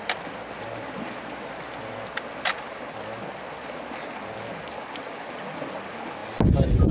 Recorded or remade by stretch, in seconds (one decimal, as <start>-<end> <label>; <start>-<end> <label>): 0.0-6.9 recorded